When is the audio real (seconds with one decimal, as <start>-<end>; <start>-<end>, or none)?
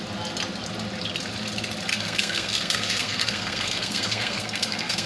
0.0-1.9